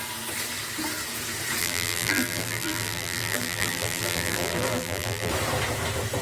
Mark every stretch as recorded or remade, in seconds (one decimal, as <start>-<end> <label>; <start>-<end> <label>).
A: 0.0-1.6 recorded; 1.6-5.3 remade; 5.3-6.2 recorded